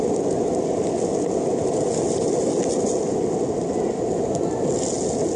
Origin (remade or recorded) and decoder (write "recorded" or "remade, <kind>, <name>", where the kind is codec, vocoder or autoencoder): recorded